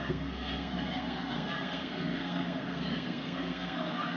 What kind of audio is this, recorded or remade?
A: remade